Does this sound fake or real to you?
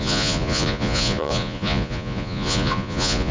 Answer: fake